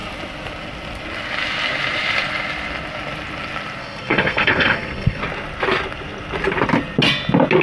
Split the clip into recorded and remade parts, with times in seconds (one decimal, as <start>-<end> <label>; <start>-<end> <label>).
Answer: 0.0-3.8 recorded; 3.8-5.2 remade; 5.2-7.6 recorded